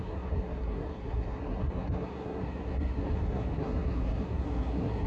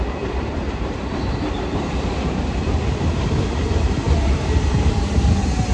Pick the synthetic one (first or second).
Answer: first